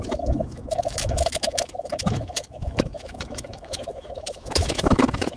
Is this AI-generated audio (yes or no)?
yes